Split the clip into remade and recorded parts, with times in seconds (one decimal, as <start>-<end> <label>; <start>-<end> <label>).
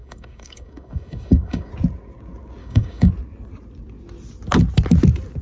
0.0-1.7 remade; 1.7-2.6 recorded; 2.6-3.1 remade; 3.1-5.4 recorded